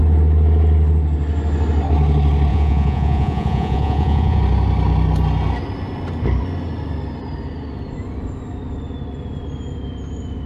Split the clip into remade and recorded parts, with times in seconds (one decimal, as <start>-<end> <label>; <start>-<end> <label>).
0.0-2.5 recorded; 2.5-4.4 remade; 4.4-10.5 recorded